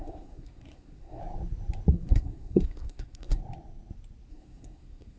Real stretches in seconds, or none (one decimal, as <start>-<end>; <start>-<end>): 1.2-1.9; 3.4-4.3